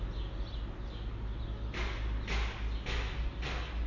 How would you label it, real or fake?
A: real